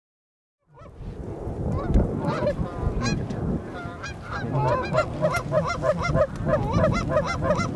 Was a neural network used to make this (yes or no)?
no